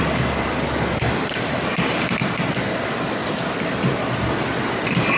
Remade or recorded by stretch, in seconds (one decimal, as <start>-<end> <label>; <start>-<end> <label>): 0.0-5.2 recorded